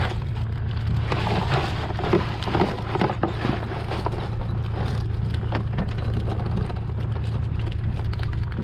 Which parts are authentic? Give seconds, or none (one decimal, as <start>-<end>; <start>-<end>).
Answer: 0.0-8.6